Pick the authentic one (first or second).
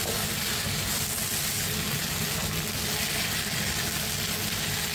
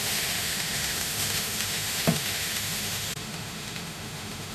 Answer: first